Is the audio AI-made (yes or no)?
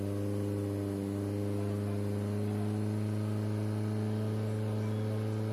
no